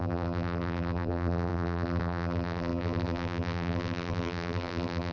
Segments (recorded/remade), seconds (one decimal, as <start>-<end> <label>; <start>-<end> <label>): 0.0-5.1 remade